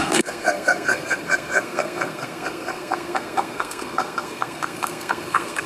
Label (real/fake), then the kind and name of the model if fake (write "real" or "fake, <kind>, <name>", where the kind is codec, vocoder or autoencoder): fake, codec, SNAC